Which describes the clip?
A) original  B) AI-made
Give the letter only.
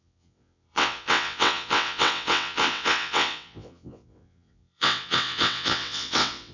B